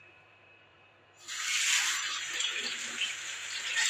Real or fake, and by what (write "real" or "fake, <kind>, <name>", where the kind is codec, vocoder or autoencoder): fake, vocoder, BigVGAN v2